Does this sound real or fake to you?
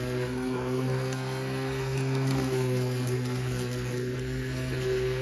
fake